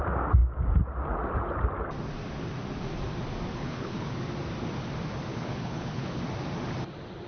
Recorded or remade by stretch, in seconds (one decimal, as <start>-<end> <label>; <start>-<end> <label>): 0.0-3.5 recorded; 3.5-4.1 remade; 4.1-5.3 recorded; 5.3-6.2 remade; 6.2-7.3 recorded